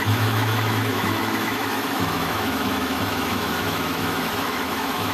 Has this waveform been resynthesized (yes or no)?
yes